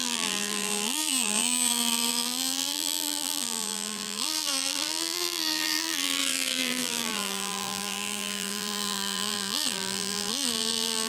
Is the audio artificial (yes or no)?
yes